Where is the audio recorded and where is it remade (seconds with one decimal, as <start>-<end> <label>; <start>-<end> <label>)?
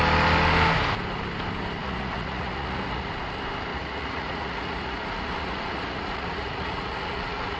0.0-1.8 recorded; 1.8-3.1 remade; 3.1-3.7 recorded; 3.7-7.6 remade